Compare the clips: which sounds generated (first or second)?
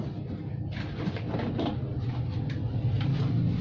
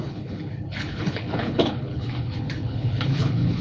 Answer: second